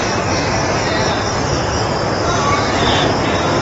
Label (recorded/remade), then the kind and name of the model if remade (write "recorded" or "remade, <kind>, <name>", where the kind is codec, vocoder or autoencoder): remade, vocoder, BigVGAN v2